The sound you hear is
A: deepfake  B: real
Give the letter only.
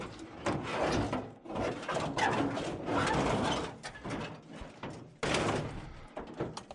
B